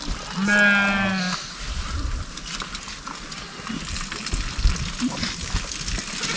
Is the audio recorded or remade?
recorded